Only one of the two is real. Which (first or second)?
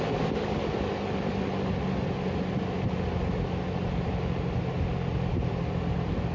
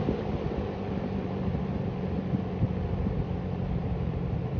first